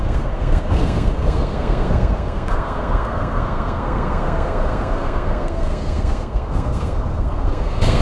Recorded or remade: remade